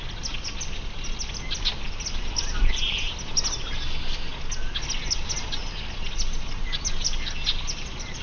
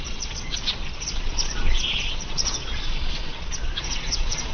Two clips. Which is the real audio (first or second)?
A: first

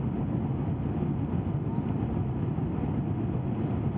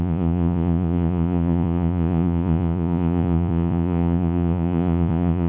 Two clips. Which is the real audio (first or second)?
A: first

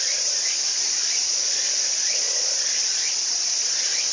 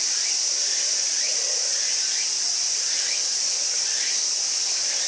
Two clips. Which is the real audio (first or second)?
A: second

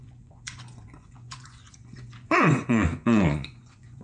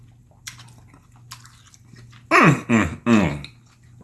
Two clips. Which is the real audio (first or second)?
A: second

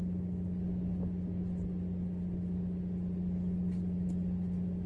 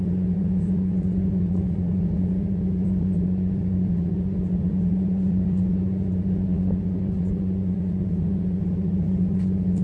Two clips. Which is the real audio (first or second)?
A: first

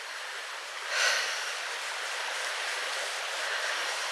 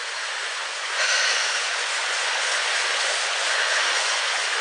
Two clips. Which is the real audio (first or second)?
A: first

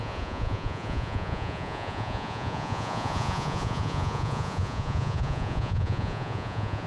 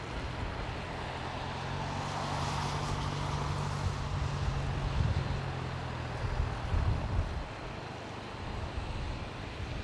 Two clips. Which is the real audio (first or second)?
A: second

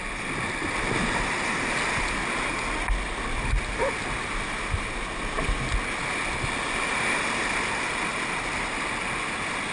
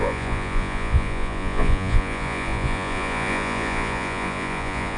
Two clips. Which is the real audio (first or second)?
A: first